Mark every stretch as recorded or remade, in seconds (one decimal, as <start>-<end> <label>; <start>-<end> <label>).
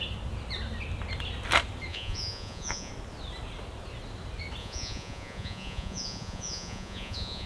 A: 0.0-1.9 recorded; 1.9-2.9 remade; 2.9-4.6 recorded; 4.6-7.5 remade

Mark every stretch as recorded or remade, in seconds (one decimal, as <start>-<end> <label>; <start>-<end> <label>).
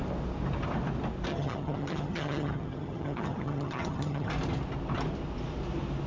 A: 0.0-1.3 recorded; 1.3-4.3 remade; 4.3-6.1 recorded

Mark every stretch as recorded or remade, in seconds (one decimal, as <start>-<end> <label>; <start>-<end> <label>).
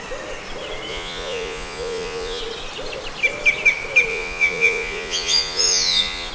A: 0.0-0.9 recorded; 0.9-2.4 remade; 2.4-4.1 recorded; 4.1-6.3 remade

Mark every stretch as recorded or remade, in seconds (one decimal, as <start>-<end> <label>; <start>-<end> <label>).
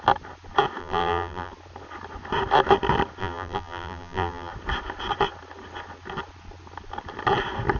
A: 0.0-0.8 recorded; 0.8-1.5 remade; 1.5-3.2 recorded; 3.2-4.5 remade; 4.5-7.8 recorded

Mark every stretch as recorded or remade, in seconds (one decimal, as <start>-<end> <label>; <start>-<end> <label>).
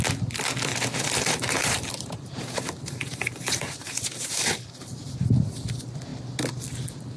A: 0.0-0.7 recorded; 0.7-5.0 remade; 5.0-7.2 recorded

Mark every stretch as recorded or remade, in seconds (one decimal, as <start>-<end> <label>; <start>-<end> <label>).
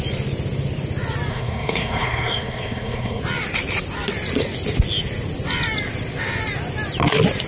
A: 0.0-1.3 recorded; 1.3-3.2 remade; 3.2-7.5 recorded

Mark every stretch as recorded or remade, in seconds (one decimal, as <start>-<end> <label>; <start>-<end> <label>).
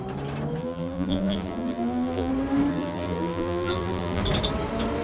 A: 0.0-0.6 recorded; 0.6-2.3 remade; 2.3-2.7 recorded; 2.7-4.2 remade; 4.2-5.0 recorded